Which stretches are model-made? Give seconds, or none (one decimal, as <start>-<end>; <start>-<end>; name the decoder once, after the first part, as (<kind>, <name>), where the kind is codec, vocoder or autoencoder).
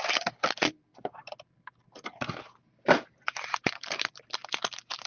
none